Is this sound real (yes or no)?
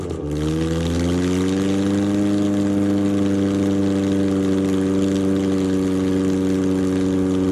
yes